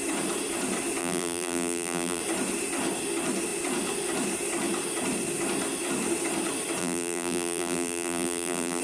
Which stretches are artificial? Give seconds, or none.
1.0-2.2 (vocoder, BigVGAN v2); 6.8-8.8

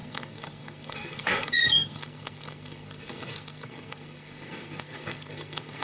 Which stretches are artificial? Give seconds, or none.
0.0-5.8 (codec, SNAC)

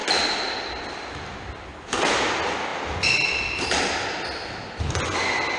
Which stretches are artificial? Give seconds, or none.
none

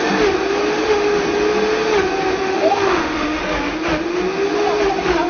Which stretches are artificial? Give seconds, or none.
2.4-3.4 (autoencoder, DAC-VAE)

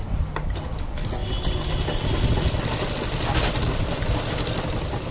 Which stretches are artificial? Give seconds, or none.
none

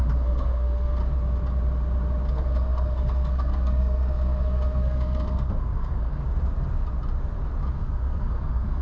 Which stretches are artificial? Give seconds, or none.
0.0-1.0 (codec, SNAC); 2.3-6.2; 7.7-8.8